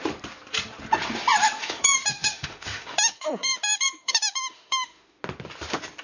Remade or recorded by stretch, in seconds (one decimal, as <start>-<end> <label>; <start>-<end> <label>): 0.0-1.6 recorded; 1.6-5.2 remade; 5.2-6.0 recorded